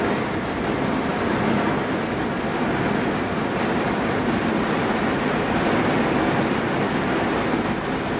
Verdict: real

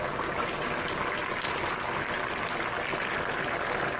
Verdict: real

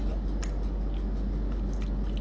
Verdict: real